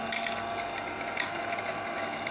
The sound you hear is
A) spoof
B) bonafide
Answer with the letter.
B